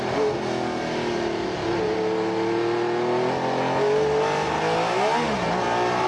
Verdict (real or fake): real